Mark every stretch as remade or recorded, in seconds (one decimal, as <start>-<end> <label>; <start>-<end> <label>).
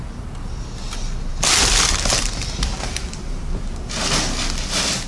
0.0-1.3 recorded; 1.3-3.2 remade; 3.2-5.1 recorded